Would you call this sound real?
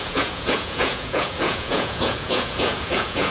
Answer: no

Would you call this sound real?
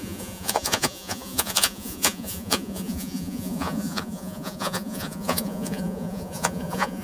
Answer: no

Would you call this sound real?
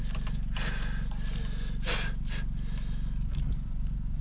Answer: yes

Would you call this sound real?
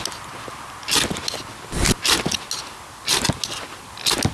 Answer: yes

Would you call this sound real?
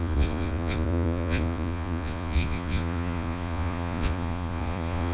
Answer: no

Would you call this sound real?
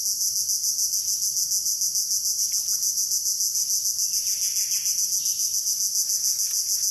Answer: yes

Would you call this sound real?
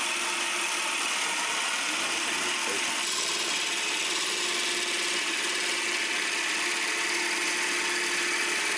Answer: yes